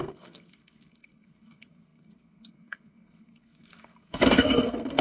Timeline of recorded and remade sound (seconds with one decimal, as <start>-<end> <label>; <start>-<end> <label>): 0.0-5.0 remade